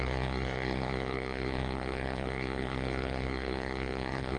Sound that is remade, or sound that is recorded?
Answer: remade